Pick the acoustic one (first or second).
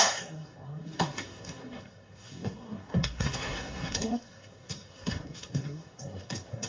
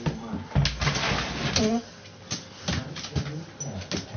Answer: second